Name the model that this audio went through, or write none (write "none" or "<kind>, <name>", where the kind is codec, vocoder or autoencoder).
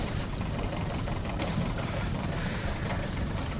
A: vocoder, BigVGAN v2